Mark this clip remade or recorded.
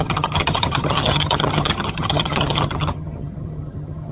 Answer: remade